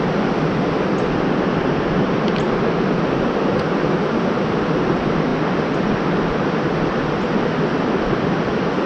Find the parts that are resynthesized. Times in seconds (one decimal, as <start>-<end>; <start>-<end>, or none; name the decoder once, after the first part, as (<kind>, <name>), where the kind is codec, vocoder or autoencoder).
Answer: none